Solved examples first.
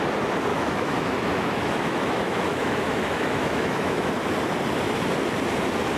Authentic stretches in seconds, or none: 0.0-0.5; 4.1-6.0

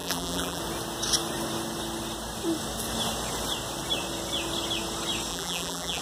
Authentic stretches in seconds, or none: 0.6-5.3